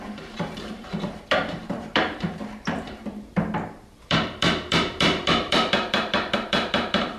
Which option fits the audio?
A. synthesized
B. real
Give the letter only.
A